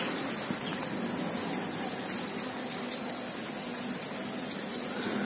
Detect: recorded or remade recorded